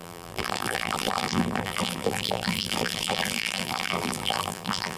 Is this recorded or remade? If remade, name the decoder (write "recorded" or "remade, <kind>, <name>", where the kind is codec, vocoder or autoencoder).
remade, vocoder, BigVGAN v2